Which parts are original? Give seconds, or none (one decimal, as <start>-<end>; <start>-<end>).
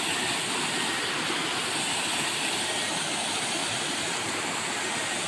0.0-3.6; 4.8-5.3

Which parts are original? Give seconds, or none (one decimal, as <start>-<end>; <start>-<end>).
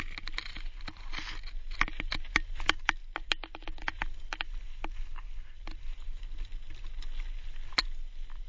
0.0-8.5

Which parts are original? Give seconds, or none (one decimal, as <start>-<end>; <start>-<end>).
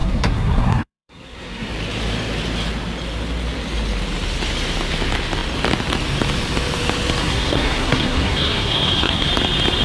1.7-7.2; 9.3-9.8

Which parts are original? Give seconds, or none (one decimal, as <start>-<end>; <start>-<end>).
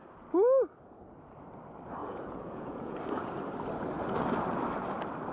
0.0-2.0; 3.0-5.3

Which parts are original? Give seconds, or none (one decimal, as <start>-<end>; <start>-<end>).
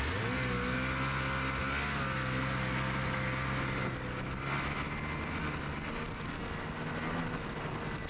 0.0-8.1